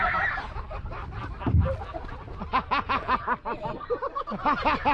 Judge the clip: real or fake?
real